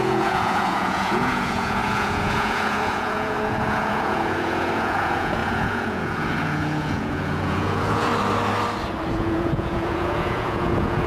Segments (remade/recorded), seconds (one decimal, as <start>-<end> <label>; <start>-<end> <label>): 0.0-8.1 remade; 8.1-9.1 recorded; 9.1-11.1 remade